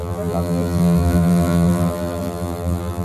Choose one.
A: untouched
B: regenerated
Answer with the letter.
B